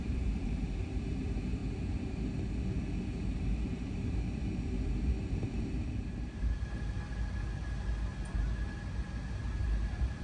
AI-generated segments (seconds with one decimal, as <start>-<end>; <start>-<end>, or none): 0.0-1.6; 3.0-4.4; 9.3-10.2